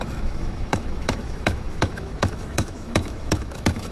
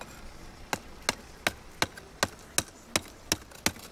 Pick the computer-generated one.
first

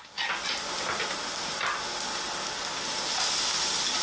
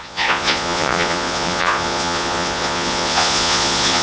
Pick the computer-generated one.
second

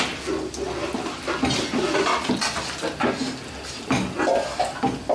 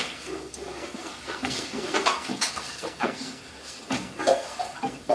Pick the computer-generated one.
second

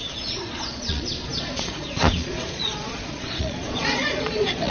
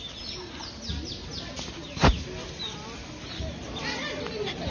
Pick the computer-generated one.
first